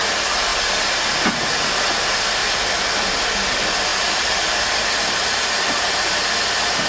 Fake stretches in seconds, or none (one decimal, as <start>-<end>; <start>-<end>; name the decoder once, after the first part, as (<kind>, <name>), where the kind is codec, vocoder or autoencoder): 2.4-3.1 (vocoder, BigVGAN v2); 3.9-5.1